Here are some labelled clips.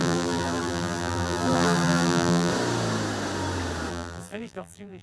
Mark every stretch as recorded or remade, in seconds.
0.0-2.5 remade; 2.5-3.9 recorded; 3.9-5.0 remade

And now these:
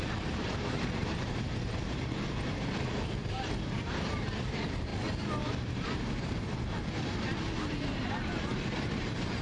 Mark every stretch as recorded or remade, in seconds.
0.0-4.9 remade; 4.9-5.5 recorded; 5.5-9.4 remade

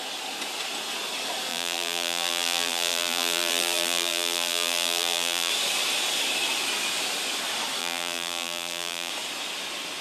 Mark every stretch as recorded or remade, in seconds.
0.0-1.5 recorded; 1.5-5.5 remade; 5.5-7.8 recorded; 7.8-9.1 remade; 9.1-10.0 recorded

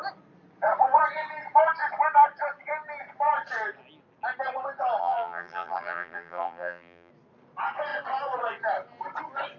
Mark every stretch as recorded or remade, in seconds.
0.0-5.0 recorded; 5.0-7.1 remade; 7.1-9.6 recorded

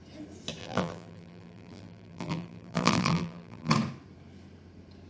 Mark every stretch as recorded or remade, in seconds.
0.0-0.6 recorded; 0.6-3.7 remade; 3.7-5.1 recorded

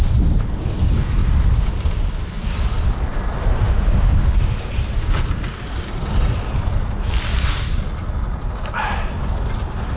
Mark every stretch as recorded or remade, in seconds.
0.0-1.2 recorded; 1.2-3.1 remade; 3.1-7.3 recorded; 7.3-7.9 remade; 7.9-10.0 recorded

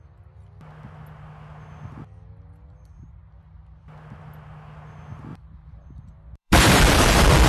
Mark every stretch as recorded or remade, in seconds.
0.0-5.3 recorded; 5.3-6.6 remade; 6.6-7.5 recorded

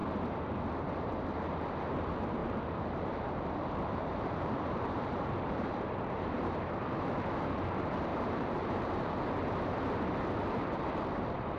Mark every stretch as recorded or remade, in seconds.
0.0-2.4 recorded; 2.4-6.4 remade; 6.4-8.1 recorded; 8.1-9.5 remade; 9.5-11.6 recorded